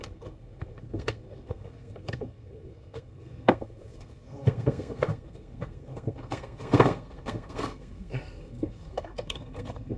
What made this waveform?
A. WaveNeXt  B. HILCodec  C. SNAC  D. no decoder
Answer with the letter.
C